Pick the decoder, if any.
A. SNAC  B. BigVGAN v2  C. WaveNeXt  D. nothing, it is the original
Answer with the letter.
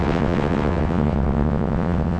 C